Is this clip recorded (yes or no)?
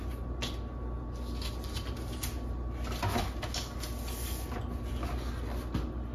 yes